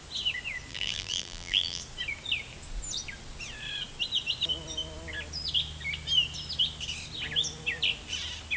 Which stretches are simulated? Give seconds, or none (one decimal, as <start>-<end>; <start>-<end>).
0.7-1.8